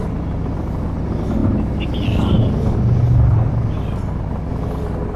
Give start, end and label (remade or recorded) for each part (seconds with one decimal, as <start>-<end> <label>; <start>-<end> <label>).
0.0-5.2 recorded